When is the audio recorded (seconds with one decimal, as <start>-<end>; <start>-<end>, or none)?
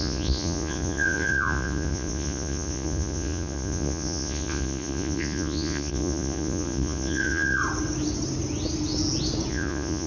7.6-9.5